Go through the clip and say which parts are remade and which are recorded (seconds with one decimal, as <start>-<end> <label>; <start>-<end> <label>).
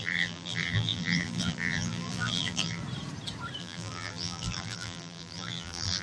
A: 0.0-2.8 remade; 2.8-3.6 recorded; 3.6-6.0 remade